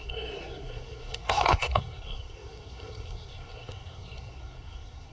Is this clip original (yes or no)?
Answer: no